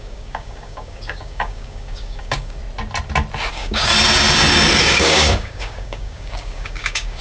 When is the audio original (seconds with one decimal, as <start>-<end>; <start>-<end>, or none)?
2.6-3.5; 3.9-4.8

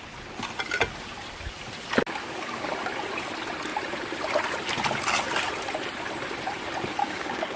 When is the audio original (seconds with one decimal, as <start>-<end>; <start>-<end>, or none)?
0.0-2.2; 2.7-7.0

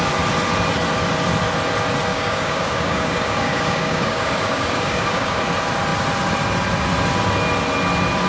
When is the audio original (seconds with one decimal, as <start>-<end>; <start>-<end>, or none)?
0.0-2.1; 5.4-8.3